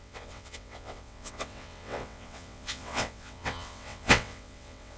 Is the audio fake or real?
fake